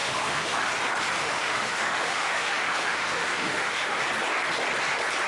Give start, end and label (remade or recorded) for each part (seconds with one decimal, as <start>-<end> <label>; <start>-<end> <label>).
0.0-0.7 remade; 0.7-1.2 recorded; 1.2-4.0 remade; 4.0-5.3 recorded